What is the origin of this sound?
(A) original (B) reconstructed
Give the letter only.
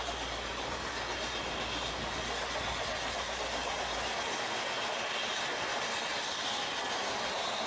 A